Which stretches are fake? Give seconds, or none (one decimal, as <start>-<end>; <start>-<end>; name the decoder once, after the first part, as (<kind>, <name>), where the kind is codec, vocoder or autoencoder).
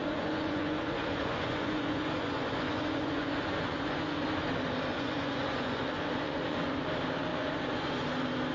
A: 0.0-4.2 (vocoder, Vocos); 4.9-6.8; 7.3-8.1